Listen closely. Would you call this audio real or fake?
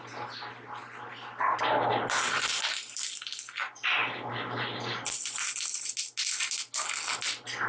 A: real